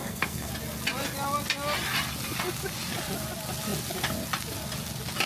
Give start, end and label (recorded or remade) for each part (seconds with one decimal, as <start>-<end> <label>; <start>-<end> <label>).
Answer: 0.0-0.5 remade; 0.5-5.3 recorded